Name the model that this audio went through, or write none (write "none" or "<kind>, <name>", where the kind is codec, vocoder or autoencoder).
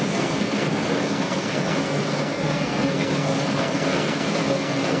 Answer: codec, SNAC